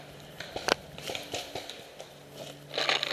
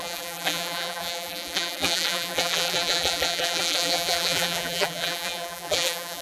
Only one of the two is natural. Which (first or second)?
first